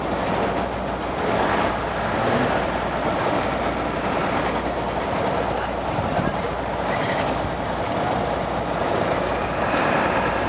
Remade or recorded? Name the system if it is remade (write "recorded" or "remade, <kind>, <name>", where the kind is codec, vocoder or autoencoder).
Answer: recorded